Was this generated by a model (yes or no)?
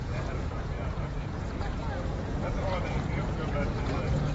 yes